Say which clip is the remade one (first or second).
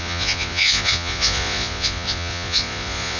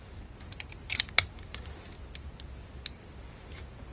first